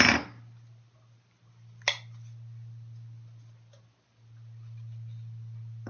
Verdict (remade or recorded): recorded